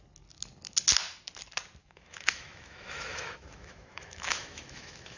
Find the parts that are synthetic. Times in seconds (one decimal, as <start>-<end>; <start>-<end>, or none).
1.8-5.2